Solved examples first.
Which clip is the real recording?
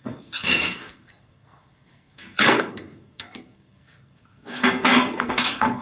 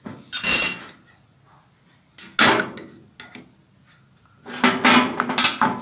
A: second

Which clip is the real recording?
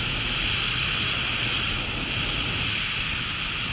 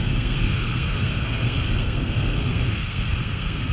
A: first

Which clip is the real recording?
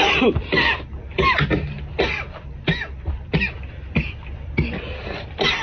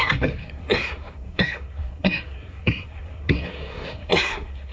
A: first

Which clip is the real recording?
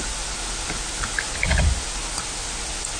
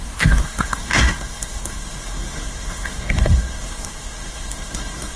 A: first